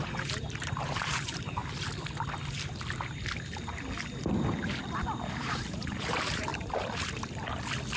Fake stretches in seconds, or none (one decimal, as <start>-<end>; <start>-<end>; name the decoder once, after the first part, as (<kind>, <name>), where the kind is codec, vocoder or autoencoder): 0.0-1.6 (vocoder, BigVGAN v2); 5.3-6.5